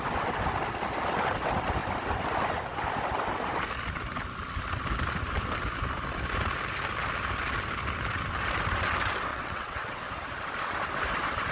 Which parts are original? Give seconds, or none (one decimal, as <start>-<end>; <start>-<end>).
0.0-9.3; 10.0-11.5